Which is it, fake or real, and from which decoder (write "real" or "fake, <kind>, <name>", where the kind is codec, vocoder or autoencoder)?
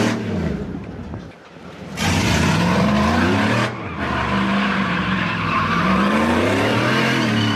fake, vocoder, BigVGAN v2